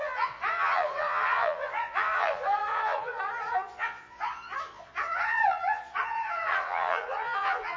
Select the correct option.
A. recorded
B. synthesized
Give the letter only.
B